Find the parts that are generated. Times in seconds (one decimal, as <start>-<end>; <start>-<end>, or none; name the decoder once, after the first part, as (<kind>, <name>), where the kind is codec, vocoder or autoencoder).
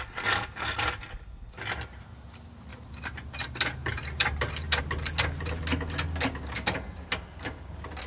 2.7-4.8 (vocoder, BigVGAN v2)